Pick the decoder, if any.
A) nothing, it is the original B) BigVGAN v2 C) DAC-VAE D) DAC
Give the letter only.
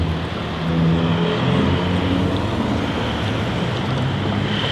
A